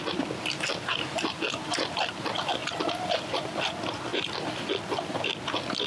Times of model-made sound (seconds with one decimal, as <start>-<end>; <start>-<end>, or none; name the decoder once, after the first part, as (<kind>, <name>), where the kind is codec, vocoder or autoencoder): 0.9-2.1 (vocoder, BigVGAN v2); 2.6-3.5